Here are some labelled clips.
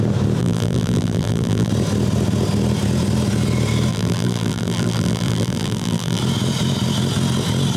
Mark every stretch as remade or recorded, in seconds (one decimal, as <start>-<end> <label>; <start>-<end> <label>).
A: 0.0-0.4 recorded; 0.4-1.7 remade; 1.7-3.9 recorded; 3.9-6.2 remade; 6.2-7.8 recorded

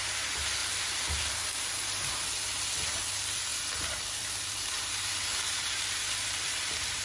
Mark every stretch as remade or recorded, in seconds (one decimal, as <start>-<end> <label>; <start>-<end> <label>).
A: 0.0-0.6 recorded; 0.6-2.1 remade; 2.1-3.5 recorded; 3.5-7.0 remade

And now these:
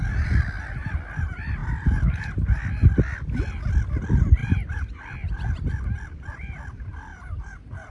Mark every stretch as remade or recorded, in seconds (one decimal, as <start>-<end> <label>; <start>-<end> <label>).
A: 0.0-4.4 recorded; 4.4-5.0 remade; 5.0-7.1 recorded; 7.1-7.9 remade

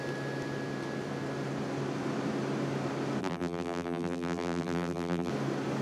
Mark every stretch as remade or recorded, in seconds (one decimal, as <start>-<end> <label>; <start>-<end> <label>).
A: 0.0-3.2 recorded; 3.2-5.3 remade; 5.3-5.8 recorded